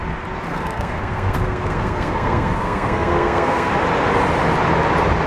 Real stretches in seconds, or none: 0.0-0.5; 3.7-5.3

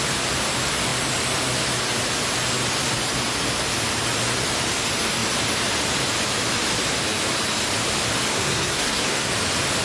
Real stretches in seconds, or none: 0.0-8.3; 9.3-9.8

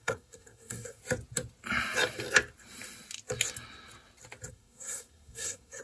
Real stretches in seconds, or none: 1.0-4.5

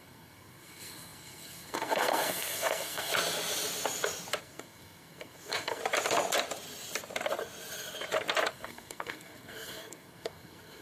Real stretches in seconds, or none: 3.1-4.4; 5.8-8.5

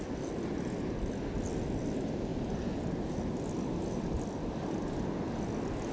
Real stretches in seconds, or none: 0.0-5.9

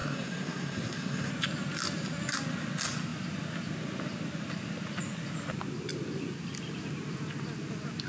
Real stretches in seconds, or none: 1.3-8.1

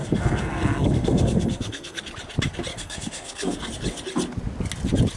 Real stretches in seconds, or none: 2.0-2.7; 3.7-5.2

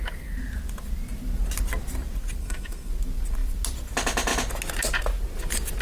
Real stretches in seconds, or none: 0.0-2.4; 2.9-5.8